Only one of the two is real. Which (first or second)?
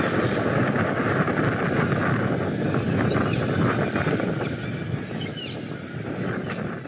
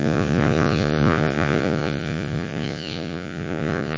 first